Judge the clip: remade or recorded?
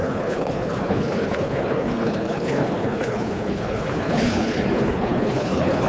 remade